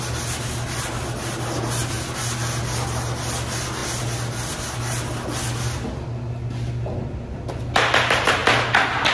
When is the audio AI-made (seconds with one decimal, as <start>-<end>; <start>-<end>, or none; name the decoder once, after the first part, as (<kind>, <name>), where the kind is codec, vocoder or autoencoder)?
none